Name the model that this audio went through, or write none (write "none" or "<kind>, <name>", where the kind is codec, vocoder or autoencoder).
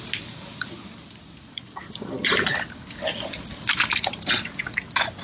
none